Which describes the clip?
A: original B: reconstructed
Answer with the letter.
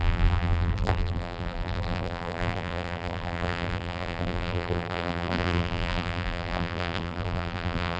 B